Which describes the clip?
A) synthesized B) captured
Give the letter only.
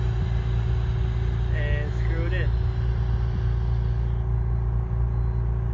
B